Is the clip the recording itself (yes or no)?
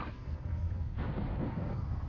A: no